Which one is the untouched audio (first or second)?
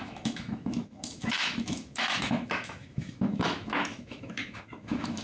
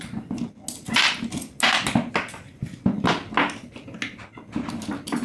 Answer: second